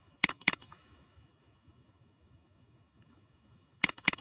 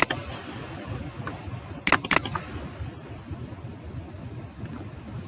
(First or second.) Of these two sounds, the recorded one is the second